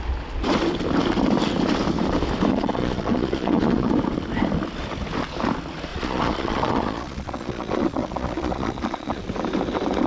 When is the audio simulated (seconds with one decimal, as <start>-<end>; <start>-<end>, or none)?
2.5-3.9; 5.9-9.2